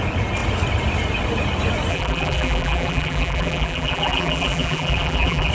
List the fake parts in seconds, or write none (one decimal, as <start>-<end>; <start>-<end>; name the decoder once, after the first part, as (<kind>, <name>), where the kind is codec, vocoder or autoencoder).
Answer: 1.9-5.5 (vocoder, BigVGAN v2)